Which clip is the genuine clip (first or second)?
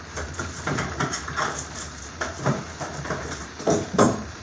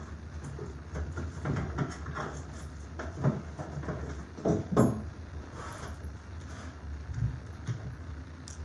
second